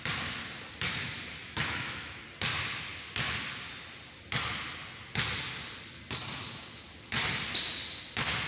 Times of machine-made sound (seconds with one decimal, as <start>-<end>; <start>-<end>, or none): 1.4-2.1